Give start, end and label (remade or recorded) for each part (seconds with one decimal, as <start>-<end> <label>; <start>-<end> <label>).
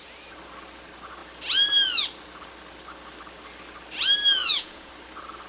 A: 0.0-4.4 recorded; 4.4-4.9 remade; 4.9-5.5 recorded